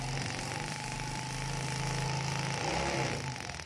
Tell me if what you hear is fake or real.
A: real